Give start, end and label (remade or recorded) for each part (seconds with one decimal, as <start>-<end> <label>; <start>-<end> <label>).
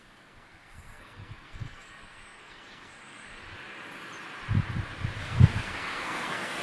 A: 0.0-3.4 remade; 3.4-5.2 recorded; 5.2-6.6 remade